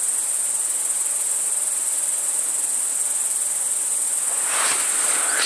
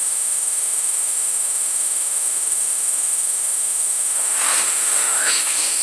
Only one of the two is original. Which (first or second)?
first